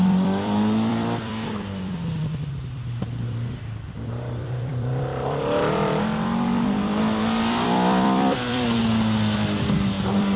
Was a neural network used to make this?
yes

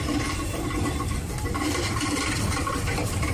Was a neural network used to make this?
yes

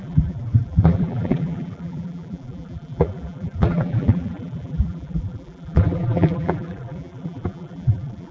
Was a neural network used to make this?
yes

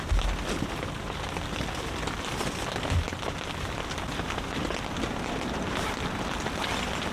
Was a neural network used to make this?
no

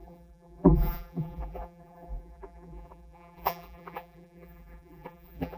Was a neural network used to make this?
yes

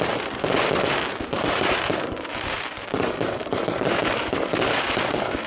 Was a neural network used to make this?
yes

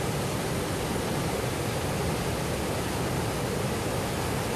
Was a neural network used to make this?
no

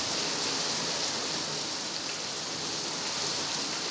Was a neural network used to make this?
no